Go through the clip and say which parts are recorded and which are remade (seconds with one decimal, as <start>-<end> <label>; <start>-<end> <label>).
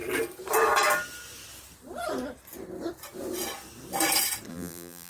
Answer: 0.0-4.5 recorded; 4.5-5.1 remade